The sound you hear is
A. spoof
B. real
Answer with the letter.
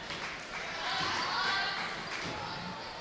A